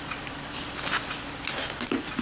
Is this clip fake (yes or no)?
no